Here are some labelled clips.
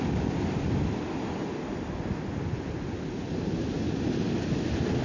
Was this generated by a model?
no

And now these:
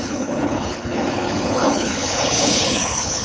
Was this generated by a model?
yes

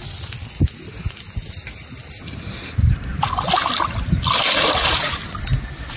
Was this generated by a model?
no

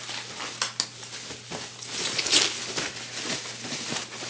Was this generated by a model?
no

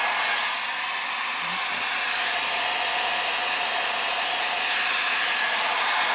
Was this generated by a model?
no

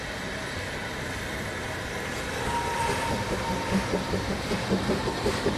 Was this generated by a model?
no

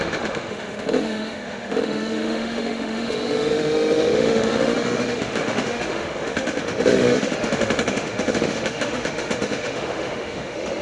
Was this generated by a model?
yes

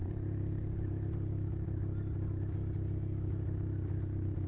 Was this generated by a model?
no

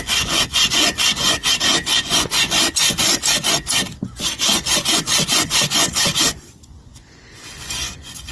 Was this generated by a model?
yes